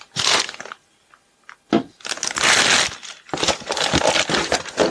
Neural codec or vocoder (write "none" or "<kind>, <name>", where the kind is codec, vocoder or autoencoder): none